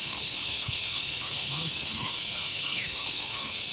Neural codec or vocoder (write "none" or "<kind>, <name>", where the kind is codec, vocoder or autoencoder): codec, SNAC